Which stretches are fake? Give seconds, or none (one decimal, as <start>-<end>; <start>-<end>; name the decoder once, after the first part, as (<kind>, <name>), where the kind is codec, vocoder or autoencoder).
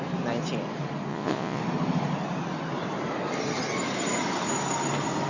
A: 1.1-1.6 (vocoder, Vocos)